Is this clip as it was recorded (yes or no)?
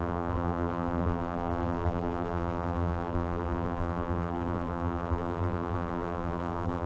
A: no